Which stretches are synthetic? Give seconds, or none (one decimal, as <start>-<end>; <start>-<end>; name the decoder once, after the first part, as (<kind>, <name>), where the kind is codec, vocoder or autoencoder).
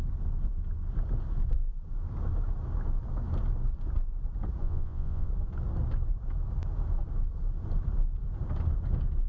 4.6-5.3 (vocoder, Vocos)